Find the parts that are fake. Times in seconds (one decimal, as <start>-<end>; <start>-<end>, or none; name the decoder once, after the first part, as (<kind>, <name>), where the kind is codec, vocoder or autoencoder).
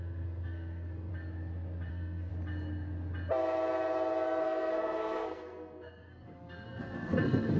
0.0-1.1 (codec, SNAC); 1.9-2.3; 4.4-7.6